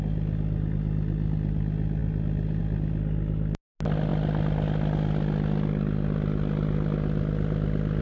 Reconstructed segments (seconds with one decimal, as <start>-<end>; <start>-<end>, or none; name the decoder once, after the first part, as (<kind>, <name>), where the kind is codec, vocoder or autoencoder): none